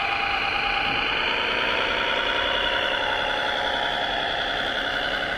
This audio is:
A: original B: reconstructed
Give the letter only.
A